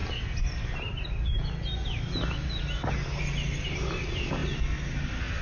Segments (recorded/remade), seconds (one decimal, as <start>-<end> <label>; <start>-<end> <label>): 0.0-5.4 recorded